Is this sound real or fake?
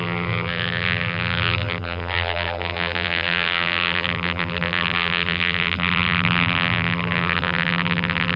fake